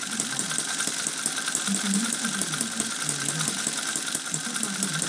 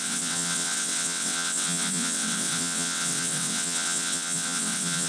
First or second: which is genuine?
first